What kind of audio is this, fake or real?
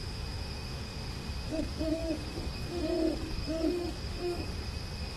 fake